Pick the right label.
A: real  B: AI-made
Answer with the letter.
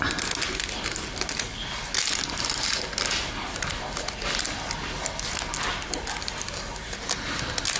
A